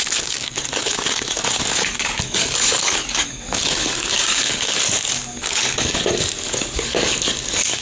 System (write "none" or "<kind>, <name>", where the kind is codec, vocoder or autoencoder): codec, DAC